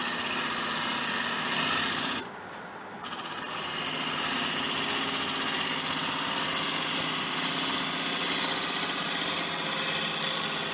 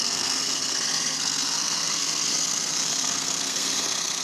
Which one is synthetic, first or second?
second